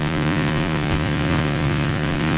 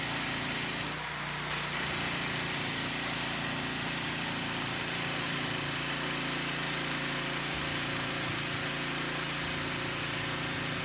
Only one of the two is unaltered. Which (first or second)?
second